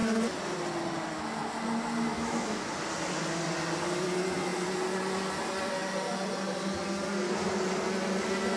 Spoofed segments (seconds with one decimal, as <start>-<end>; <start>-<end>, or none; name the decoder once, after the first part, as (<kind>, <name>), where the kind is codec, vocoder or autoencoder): 2.1-2.7 (autoencoder, DAC-VAE)